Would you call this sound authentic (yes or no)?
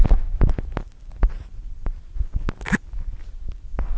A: yes